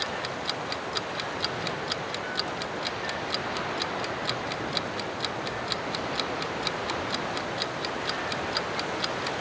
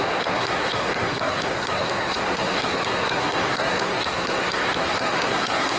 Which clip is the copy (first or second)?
second